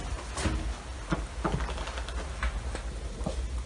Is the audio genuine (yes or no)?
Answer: yes